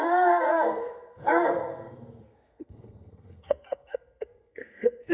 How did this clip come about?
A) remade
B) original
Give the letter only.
A